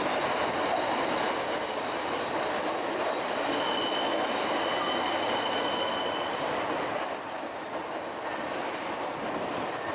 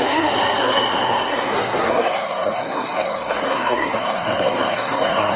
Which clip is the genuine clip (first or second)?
first